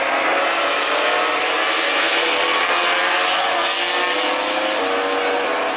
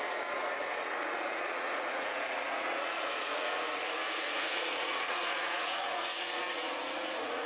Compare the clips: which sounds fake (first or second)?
second